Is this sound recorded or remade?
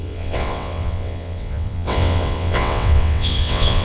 remade